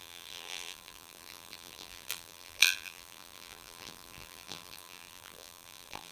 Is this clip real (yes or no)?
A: no